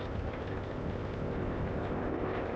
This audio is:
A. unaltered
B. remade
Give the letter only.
B